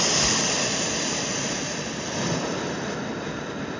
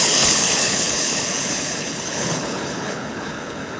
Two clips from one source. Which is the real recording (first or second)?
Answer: first